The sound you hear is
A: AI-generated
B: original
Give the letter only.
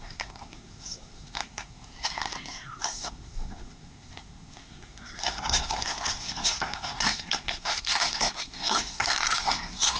A